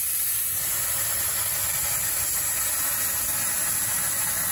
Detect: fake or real real